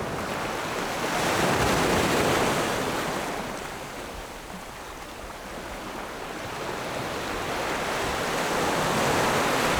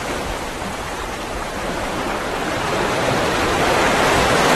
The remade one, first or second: second